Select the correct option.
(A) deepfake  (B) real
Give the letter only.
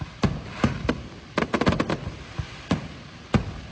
B